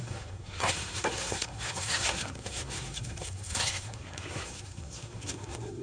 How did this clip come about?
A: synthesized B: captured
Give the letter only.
A